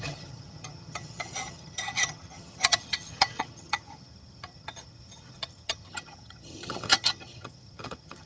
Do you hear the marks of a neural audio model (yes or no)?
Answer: yes